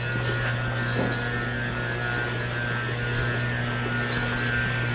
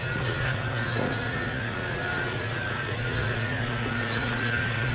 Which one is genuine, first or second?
first